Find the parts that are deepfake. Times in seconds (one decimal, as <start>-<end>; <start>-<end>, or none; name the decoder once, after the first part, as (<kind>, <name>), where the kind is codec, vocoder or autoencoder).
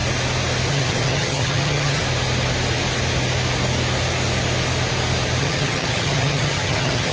0.7-2.0 (vocoder, HiFi-GAN); 5.4-7.1